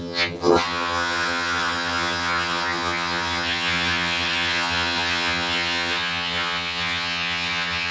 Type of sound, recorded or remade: remade